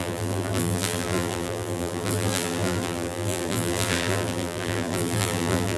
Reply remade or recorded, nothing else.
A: remade